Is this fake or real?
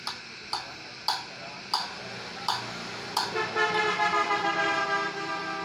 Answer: real